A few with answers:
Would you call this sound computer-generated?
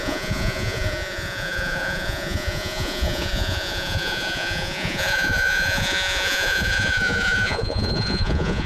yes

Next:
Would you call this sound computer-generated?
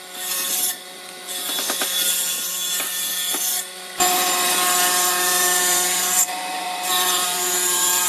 yes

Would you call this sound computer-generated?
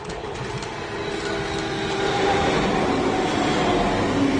no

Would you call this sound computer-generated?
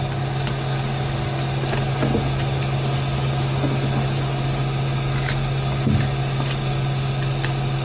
no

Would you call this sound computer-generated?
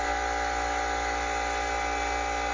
no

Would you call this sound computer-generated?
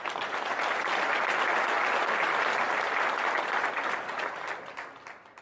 no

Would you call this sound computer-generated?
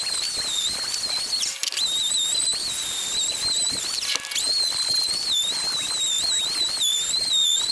no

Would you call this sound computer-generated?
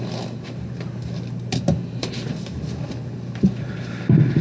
no